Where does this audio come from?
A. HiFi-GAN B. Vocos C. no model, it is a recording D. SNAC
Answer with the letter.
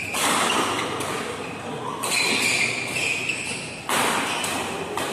C